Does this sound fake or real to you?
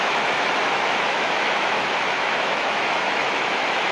fake